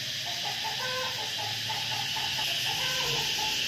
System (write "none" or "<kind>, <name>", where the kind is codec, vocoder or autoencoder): none